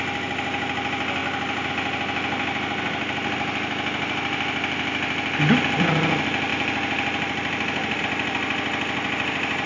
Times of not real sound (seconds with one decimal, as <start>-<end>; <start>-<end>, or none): none